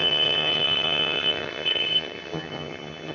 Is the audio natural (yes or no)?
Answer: no